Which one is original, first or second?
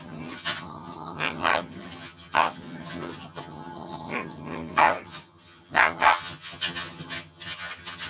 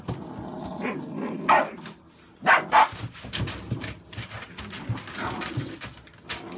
second